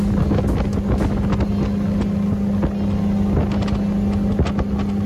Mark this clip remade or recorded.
recorded